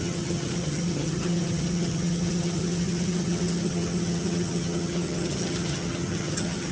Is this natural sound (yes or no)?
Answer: no